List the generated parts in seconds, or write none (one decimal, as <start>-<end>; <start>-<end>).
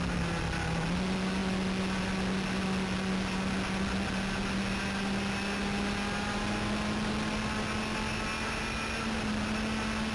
none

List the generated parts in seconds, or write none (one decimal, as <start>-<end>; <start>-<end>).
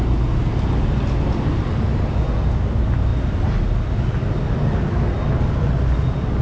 none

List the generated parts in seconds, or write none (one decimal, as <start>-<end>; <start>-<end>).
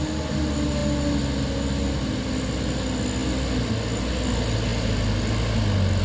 none